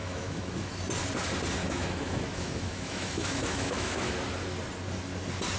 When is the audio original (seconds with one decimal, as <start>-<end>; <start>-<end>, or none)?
0.7-1.6; 4.1-5.6